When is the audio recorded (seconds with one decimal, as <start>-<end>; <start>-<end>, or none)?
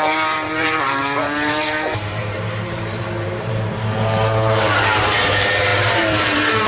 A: none